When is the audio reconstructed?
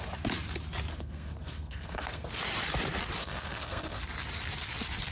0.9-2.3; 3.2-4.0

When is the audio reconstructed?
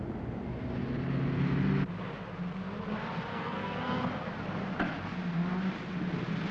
3.3-4.0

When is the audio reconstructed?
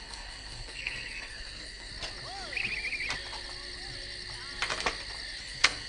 0.0-1.9; 5.4-5.9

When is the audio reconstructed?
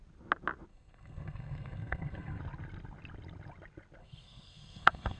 0.7-2.4; 4.0-5.2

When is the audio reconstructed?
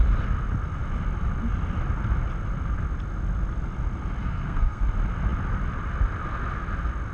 4.2-4.8